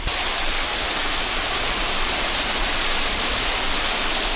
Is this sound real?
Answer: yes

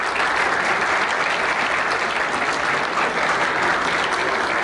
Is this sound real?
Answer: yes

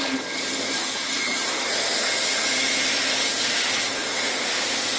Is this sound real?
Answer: yes